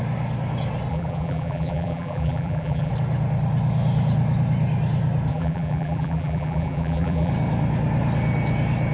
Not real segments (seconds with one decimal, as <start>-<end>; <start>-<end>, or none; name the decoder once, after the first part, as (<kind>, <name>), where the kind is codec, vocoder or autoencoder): 0.9-2.9 (vocoder, BigVGAN v2); 5.3-7.3